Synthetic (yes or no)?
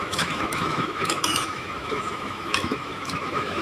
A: yes